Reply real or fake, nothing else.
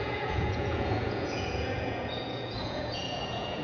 fake